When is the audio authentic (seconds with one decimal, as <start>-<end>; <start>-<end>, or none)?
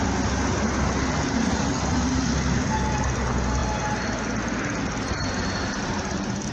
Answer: 0.0-6.5